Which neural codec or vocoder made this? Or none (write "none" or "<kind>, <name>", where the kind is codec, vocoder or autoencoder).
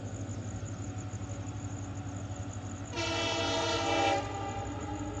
none